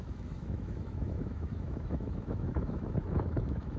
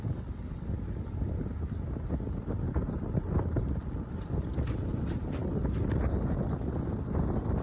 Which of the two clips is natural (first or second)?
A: second